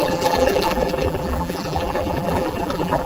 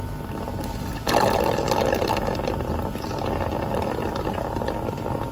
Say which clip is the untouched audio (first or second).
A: second